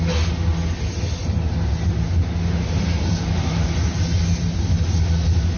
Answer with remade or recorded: recorded